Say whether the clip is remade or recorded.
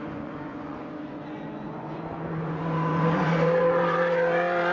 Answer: remade